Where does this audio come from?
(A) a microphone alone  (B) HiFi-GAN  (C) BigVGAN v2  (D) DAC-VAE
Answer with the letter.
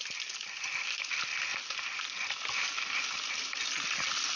A